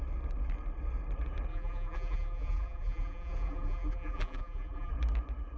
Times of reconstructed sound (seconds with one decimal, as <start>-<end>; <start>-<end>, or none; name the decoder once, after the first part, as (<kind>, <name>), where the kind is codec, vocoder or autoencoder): 1.5-4.9 (vocoder, BigVGAN v2)